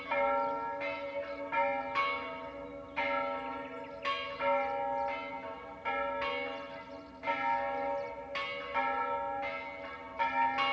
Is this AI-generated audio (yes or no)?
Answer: no